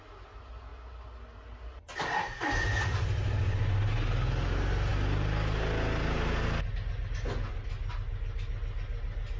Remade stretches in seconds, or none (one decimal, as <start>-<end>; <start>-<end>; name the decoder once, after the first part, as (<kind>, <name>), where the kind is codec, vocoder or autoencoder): none